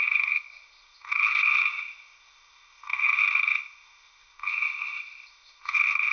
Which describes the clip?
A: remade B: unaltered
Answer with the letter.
A